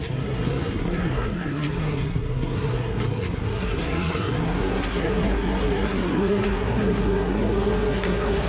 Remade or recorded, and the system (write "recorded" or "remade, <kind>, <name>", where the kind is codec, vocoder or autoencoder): remade, codec, SNAC